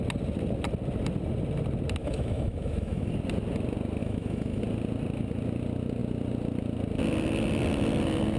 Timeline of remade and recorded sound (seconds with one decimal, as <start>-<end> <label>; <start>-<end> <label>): 0.0-2.0 recorded; 2.0-3.1 remade; 3.1-4.0 recorded; 4.0-4.6 remade; 4.6-8.4 recorded